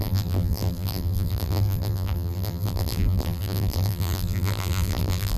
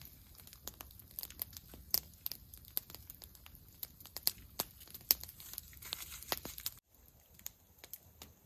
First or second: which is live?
second